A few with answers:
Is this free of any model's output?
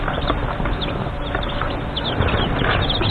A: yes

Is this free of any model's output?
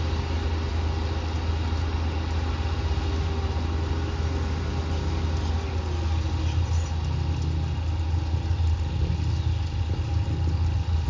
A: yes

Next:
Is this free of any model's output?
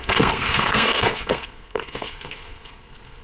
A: no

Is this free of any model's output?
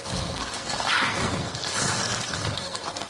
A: no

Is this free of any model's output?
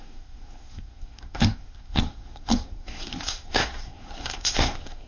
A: no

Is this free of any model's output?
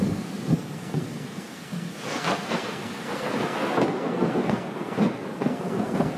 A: no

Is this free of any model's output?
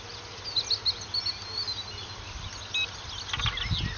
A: yes